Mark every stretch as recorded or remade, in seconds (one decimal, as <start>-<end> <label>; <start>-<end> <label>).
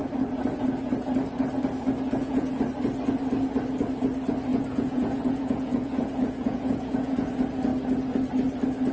0.0-2.1 recorded; 2.1-2.6 remade; 2.6-4.5 recorded; 4.5-7.3 remade; 7.3-8.9 recorded